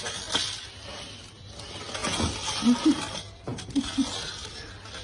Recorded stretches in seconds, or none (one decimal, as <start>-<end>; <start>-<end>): 0.0-5.0